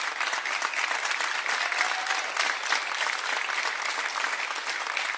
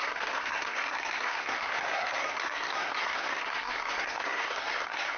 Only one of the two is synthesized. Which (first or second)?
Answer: second